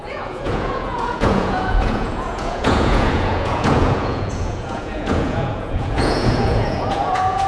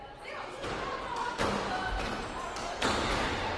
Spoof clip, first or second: first